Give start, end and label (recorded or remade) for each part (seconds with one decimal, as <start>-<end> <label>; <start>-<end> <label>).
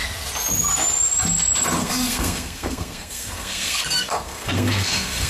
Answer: 0.0-1.8 recorded; 1.8-5.3 remade